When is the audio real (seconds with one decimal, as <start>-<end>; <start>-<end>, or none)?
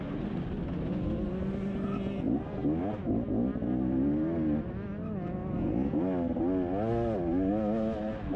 0.0-8.4